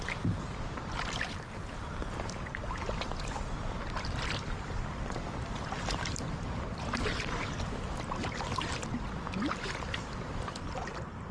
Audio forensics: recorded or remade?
recorded